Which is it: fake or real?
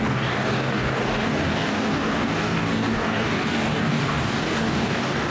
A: fake